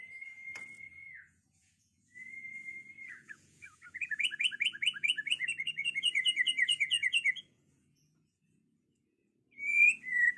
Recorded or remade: remade